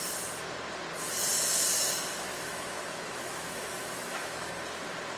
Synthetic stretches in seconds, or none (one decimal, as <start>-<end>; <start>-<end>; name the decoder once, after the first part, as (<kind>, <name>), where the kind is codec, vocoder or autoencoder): 2.3-4.5 (autoencoder, DAC-VAE)